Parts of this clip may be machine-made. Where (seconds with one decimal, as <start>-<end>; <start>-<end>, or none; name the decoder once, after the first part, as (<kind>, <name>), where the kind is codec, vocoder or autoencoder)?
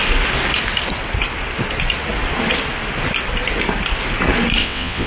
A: 4.6-5.1 (vocoder, WaveNeXt)